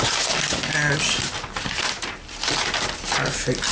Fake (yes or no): no